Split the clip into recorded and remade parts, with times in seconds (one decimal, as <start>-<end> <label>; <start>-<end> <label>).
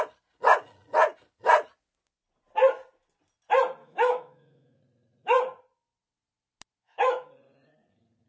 0.0-3.8 recorded; 3.8-4.8 remade; 4.8-6.8 recorded; 6.8-7.3 remade; 7.3-8.3 recorded